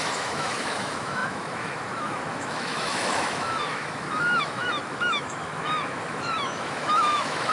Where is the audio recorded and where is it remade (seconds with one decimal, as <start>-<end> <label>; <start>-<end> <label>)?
0.0-7.5 remade